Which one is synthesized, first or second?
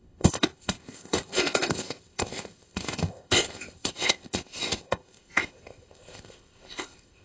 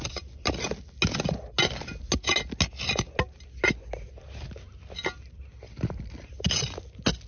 first